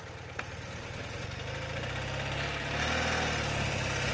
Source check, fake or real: real